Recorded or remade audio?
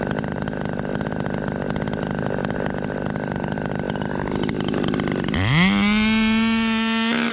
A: recorded